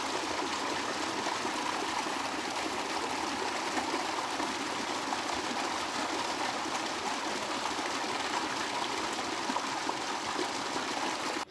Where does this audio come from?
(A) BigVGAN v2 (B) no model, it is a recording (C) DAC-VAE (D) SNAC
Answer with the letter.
B